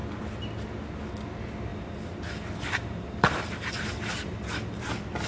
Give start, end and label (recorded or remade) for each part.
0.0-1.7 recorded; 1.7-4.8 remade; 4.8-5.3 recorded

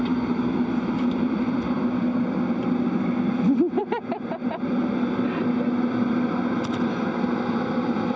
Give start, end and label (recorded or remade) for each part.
0.0-8.2 recorded

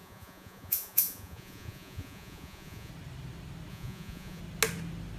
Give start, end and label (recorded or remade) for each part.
0.0-2.9 remade; 2.9-3.7 recorded; 3.7-4.4 remade; 4.4-5.2 recorded